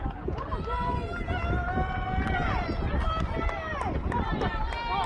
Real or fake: real